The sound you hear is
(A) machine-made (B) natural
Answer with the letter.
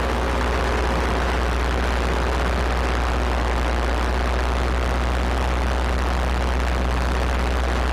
B